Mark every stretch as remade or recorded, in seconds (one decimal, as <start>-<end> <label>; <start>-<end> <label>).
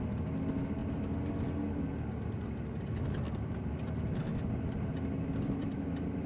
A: 0.0-6.3 recorded